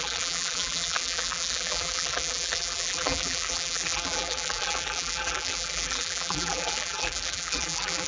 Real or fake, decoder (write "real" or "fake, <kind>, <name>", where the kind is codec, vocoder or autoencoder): fake, vocoder, BigVGAN v2